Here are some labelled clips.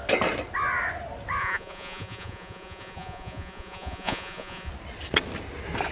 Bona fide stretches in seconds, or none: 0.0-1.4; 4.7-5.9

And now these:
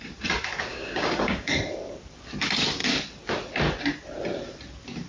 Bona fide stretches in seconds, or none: 0.0-0.7; 1.5-5.1

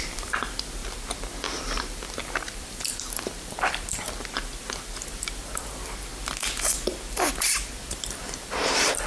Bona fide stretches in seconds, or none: 6.1-7.4

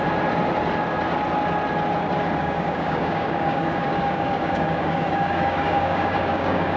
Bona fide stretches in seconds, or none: 0.0-2.4